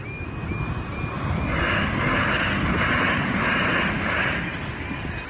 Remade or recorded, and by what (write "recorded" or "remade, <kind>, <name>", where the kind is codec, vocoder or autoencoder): recorded